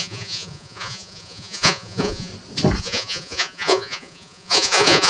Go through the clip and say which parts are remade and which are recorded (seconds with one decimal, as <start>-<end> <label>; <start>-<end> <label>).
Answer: 0.0-2.3 remade; 2.3-2.8 recorded; 2.8-5.1 remade